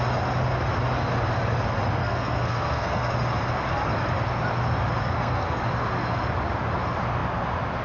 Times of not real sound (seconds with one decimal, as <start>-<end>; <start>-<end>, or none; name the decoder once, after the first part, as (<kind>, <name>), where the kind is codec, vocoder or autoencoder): 2.0-3.1 (codec, SNAC); 5.0-5.6